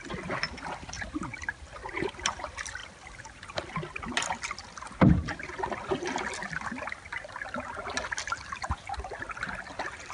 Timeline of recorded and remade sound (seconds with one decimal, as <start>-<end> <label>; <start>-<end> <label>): 0.0-10.1 recorded